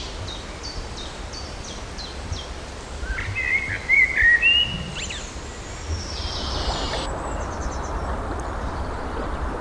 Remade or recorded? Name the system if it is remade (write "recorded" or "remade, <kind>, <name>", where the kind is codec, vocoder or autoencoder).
recorded